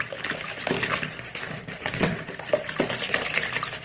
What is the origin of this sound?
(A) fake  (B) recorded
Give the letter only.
B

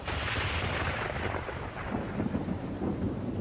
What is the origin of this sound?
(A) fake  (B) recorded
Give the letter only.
A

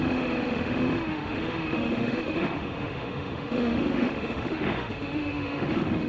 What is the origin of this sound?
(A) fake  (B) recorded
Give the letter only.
A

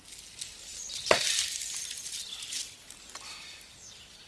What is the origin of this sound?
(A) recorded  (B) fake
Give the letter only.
A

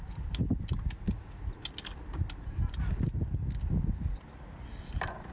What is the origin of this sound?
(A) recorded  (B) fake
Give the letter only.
A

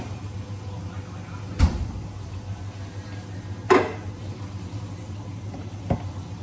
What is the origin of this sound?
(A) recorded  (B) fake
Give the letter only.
A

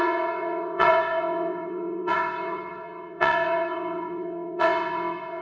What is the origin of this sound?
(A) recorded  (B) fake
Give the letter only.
B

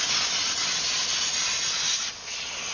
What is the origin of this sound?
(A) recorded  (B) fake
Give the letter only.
B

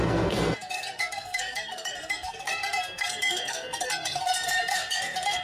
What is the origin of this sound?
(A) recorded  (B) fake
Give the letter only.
B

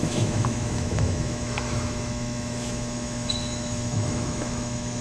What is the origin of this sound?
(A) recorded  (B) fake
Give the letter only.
B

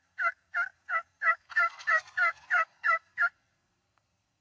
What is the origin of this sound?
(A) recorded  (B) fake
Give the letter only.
B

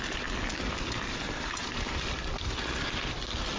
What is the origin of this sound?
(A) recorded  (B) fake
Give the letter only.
A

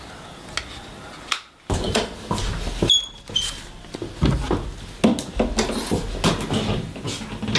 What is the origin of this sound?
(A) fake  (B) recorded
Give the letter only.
B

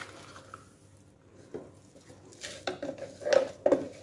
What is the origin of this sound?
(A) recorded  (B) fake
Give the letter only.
A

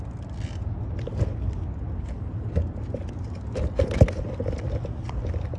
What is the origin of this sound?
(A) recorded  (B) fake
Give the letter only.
A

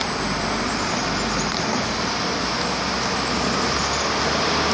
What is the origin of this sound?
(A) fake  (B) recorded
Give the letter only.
B